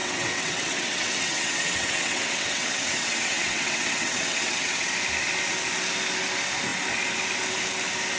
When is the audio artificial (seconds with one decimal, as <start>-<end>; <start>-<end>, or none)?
0.0-4.9